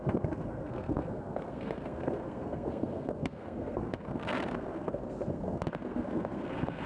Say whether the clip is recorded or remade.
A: remade